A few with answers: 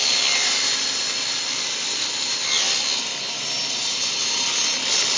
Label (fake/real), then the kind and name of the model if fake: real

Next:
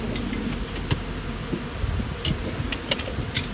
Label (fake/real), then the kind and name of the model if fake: real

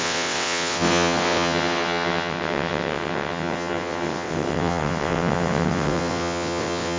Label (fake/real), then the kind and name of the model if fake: fake, vocoder, WaveNeXt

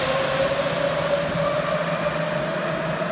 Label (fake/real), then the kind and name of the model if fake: real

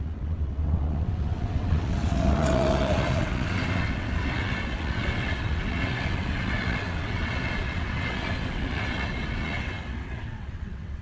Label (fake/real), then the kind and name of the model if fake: fake, vocoder, WaveNeXt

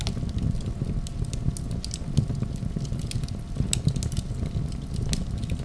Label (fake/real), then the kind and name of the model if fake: real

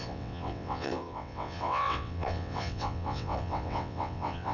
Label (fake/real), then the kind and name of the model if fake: fake, vocoder, WaveNeXt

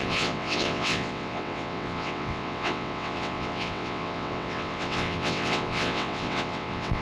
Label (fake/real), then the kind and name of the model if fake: fake, vocoder, WaveNeXt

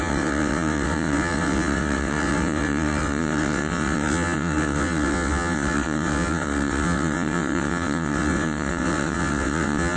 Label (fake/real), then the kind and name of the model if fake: fake, vocoder, WaveNeXt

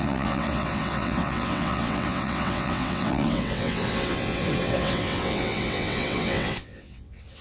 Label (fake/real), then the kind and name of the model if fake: fake, vocoder, WaveNeXt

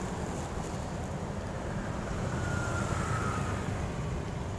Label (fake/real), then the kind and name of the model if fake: real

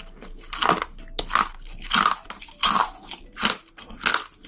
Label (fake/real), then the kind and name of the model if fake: real